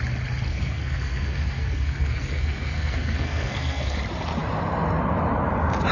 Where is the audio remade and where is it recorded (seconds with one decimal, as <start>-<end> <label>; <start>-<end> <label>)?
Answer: 0.0-0.5 recorded; 0.5-4.0 remade; 4.0-5.9 recorded